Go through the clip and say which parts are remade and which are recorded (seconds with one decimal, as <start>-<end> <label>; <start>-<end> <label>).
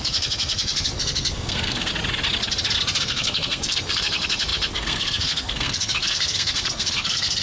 0.0-1.9 remade; 1.9-3.0 recorded; 3.0-7.4 remade